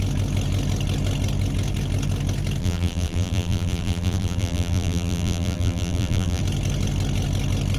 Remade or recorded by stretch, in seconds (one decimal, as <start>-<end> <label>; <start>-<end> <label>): 0.0-2.6 recorded; 2.6-6.4 remade; 6.4-7.8 recorded